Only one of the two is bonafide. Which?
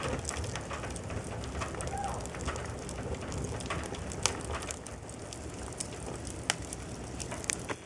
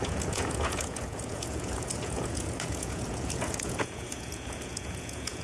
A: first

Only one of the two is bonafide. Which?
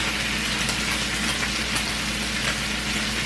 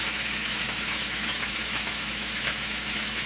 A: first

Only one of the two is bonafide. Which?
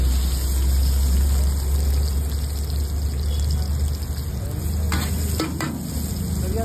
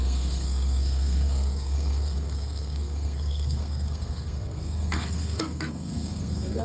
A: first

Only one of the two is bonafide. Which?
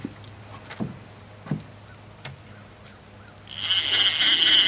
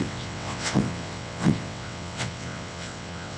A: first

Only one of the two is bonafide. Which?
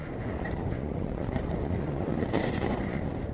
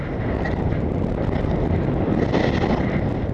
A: second